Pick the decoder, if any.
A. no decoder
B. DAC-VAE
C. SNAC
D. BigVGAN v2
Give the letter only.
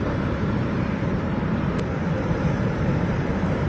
D